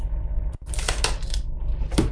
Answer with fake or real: real